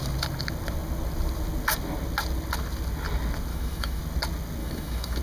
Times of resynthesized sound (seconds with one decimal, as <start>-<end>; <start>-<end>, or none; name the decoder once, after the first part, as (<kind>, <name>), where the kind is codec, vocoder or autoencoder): 3.5-4.0 (autoencoder, DAC-VAE); 4.6-5.2